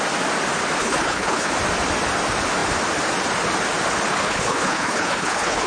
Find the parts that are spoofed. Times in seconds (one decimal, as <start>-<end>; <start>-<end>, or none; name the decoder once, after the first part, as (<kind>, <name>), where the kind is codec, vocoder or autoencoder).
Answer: 0.8-1.5 (codec, HILCodec); 4.1-5.7